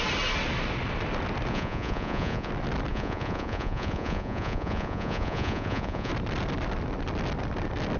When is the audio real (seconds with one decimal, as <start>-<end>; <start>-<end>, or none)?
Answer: 0.0-1.5; 2.5-2.9; 6.1-8.0